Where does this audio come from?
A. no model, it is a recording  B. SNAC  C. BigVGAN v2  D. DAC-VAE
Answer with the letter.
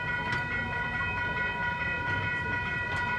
A